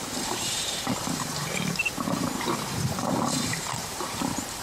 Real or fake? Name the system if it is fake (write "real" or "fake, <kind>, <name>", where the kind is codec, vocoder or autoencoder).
fake, vocoder, BigVGAN v2